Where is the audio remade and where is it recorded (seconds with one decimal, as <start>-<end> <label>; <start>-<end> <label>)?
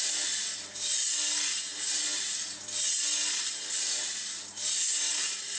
0.0-5.6 recorded